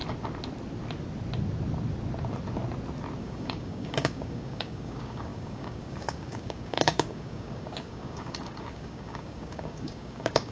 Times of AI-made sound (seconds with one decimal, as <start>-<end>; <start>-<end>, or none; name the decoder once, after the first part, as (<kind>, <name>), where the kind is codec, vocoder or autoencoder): 3.2-10.5 (codec, DAC)

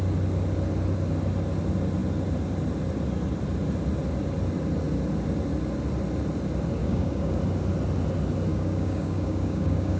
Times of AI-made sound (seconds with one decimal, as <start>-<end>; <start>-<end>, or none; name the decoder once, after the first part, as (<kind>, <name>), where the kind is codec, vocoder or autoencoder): 6.8-7.4 (codec, DAC); 8.5-10.0

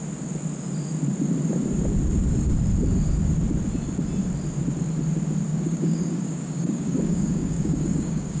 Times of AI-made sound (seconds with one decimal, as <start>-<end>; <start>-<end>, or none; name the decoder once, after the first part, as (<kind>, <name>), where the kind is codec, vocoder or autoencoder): 5.5-8.4 (codec, DAC)

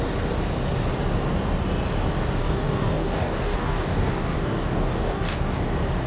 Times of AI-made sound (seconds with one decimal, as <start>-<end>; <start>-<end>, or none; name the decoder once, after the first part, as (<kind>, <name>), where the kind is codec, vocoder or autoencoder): 2.4-5.6 (codec, DAC)

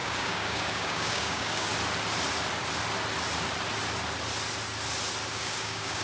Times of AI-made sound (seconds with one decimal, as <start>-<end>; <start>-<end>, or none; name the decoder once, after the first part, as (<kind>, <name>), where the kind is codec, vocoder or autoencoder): 0.0-1.7 (codec, DAC); 5.3-6.0

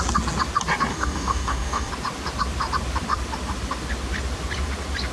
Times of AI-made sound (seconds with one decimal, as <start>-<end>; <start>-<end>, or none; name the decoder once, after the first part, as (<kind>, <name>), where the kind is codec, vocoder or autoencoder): 0.9-1.9 (codec, DAC)